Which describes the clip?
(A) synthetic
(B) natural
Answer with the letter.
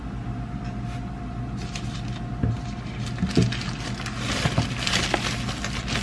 B